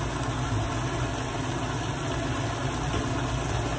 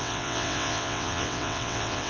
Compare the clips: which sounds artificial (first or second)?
second